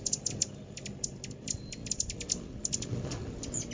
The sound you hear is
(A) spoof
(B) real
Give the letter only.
B